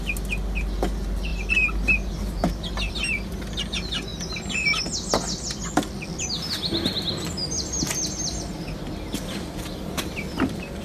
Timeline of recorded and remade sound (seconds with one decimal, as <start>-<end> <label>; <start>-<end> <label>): 0.0-10.8 recorded

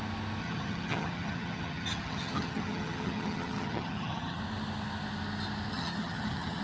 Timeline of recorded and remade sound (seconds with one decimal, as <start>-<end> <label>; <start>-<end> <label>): 0.0-0.4 recorded; 0.4-4.4 remade; 4.4-5.7 recorded; 5.7-6.6 remade

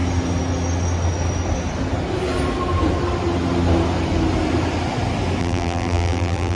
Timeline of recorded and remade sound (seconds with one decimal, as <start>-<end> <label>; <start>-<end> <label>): 0.0-5.4 recorded; 5.4-6.6 remade

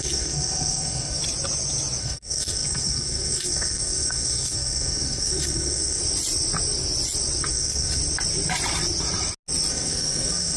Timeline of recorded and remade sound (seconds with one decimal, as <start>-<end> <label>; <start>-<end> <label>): 0.0-1.2 remade; 1.2-2.0 recorded; 2.0-6.0 remade; 6.0-7.5 recorded; 7.5-8.0 remade; 8.0-9.7 recorded; 9.7-10.6 remade

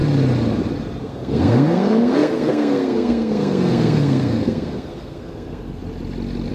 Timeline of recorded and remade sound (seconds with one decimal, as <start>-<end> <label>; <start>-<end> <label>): 0.0-1.0 recorded; 1.0-5.8 remade; 5.8-6.5 recorded

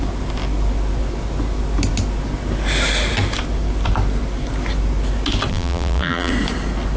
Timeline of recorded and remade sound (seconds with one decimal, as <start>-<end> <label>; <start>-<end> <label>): 0.0-5.5 recorded; 5.5-6.3 remade; 6.3-7.0 recorded

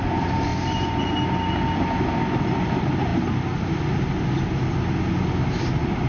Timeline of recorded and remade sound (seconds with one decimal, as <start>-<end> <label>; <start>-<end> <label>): 0.0-6.1 recorded